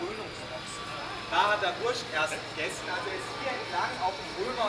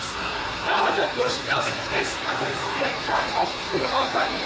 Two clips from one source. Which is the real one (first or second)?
first